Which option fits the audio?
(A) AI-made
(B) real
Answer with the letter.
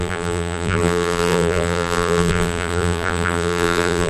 A